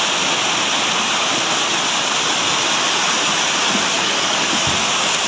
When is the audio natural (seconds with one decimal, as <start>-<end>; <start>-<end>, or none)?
0.0-3.9; 4.5-5.3